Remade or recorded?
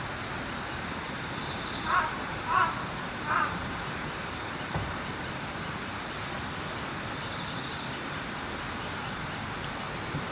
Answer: recorded